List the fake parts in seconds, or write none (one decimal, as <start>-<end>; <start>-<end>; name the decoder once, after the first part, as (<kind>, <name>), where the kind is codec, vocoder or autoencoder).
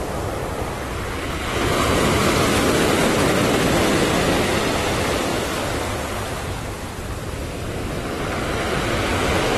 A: none